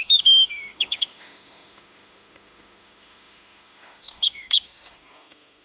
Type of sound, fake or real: fake